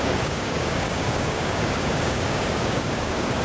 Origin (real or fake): fake